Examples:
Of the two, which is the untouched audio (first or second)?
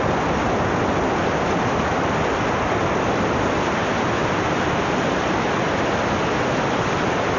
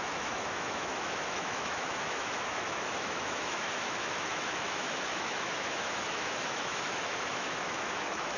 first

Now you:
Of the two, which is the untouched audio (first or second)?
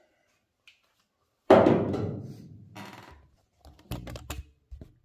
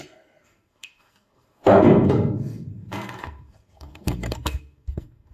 first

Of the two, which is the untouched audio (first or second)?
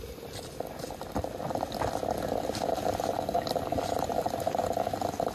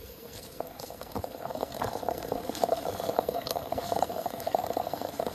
first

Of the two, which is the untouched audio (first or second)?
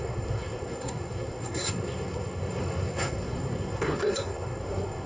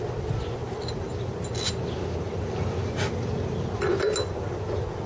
second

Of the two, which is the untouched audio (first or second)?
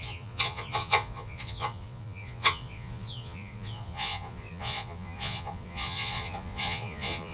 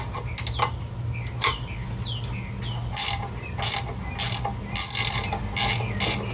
second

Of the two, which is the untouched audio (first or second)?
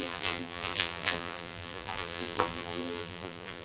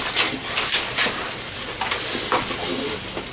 second